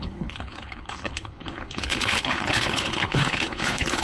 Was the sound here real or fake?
fake